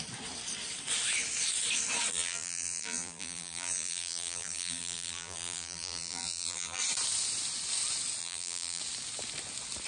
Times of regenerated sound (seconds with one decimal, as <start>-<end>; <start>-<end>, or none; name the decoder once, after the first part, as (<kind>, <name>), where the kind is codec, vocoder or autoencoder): 2.1-6.8 (vocoder, BigVGAN v2); 8.2-8.8